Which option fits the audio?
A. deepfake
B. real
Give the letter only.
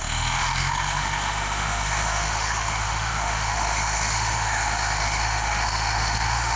A